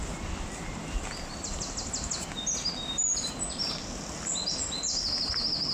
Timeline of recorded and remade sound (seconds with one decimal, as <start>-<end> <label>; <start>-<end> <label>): 0.0-5.7 recorded